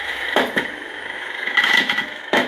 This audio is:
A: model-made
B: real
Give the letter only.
A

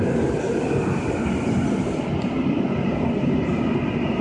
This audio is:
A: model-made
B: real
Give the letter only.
B